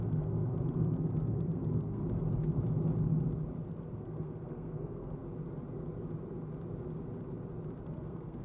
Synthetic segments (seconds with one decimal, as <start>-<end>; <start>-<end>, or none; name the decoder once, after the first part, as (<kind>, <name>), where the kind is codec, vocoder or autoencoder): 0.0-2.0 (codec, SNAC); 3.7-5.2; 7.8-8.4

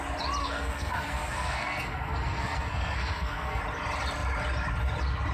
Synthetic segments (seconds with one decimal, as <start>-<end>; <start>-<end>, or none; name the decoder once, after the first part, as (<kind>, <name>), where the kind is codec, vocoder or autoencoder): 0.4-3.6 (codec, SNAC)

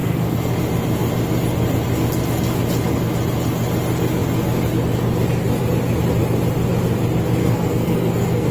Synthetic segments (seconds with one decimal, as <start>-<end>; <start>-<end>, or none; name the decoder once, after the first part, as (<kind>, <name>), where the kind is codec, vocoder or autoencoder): 0.0-0.5 (codec, SNAC); 7.4-8.5